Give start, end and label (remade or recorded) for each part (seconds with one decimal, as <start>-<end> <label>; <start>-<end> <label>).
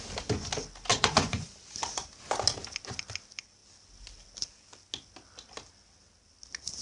0.0-0.9 recorded; 0.9-1.5 remade; 1.5-6.8 recorded